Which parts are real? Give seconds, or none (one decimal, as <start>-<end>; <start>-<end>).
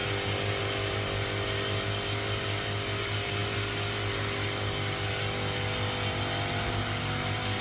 0.0-7.6